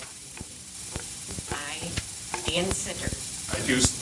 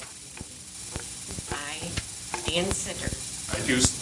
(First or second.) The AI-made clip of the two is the first